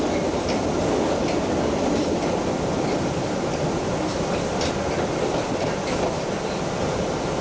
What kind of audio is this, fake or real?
real